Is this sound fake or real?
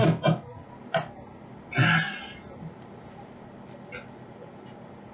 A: real